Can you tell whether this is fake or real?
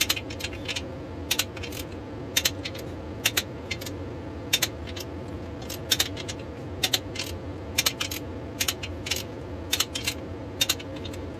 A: real